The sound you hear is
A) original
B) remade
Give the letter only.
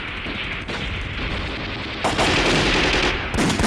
A